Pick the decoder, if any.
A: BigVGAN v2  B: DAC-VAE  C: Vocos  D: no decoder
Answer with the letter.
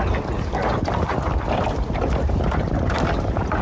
D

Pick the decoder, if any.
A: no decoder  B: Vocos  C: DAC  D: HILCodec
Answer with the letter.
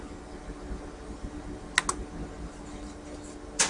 A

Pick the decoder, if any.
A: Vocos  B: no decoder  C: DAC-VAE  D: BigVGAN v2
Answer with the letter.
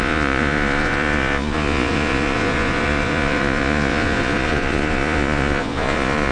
A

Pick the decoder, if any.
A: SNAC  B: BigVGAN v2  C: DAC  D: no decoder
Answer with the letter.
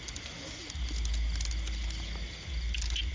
D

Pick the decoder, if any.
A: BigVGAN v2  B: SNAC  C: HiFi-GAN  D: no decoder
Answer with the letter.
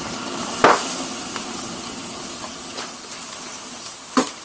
D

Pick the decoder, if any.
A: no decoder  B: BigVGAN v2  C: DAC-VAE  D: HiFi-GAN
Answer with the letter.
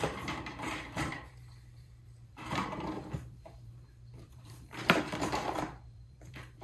B